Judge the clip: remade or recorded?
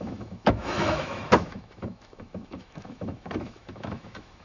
remade